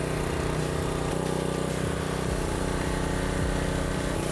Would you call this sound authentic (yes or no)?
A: yes